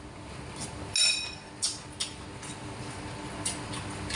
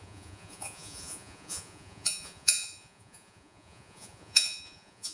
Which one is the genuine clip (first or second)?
first